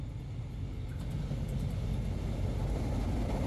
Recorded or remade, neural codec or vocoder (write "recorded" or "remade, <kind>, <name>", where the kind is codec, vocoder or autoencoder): recorded